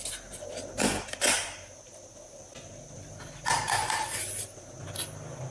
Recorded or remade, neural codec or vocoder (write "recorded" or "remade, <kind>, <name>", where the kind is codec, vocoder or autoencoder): recorded